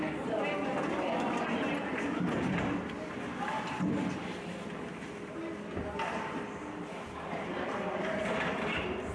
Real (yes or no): yes